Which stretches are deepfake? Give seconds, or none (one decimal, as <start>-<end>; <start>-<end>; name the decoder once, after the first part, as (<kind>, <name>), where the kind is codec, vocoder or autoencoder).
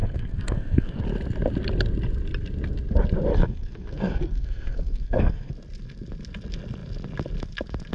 0.0-1.0 (codec, SNAC); 3.3-5.5